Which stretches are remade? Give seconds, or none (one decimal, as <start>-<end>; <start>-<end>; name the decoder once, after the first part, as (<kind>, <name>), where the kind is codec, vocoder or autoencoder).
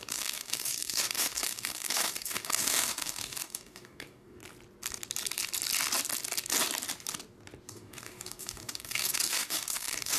0.0-4.4 (codec, DAC); 7.7-10.2